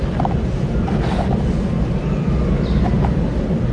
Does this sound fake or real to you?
real